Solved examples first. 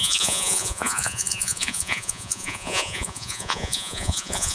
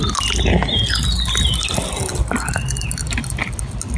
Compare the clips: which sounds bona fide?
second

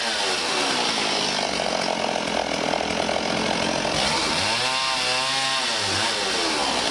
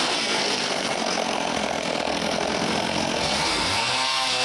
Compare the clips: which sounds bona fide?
first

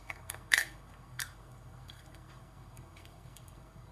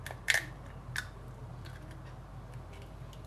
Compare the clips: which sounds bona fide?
second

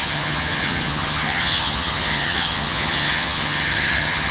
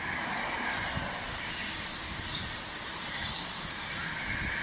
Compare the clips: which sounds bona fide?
second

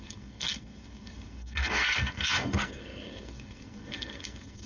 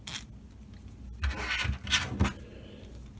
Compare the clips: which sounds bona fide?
second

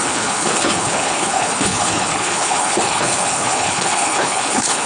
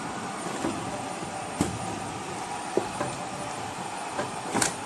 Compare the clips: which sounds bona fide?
second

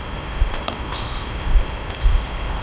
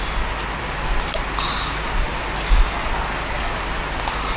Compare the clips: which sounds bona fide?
second